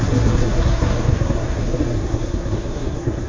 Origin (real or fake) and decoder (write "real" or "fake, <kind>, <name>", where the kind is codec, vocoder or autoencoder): fake, codec, SNAC